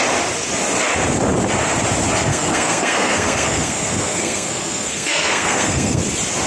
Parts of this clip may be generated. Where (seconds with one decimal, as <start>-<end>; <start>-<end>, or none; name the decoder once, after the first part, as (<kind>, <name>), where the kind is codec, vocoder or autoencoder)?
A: 2.3-6.0 (codec, SNAC)